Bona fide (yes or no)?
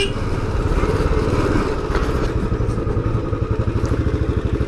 yes